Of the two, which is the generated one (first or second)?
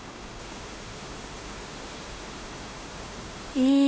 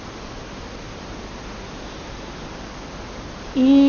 first